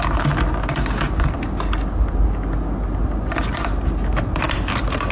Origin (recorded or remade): recorded